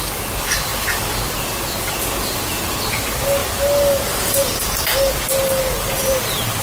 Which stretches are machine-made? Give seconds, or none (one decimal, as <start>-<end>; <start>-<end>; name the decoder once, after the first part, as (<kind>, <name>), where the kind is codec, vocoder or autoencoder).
0.7-1.4 (vocoder, BigVGAN v2)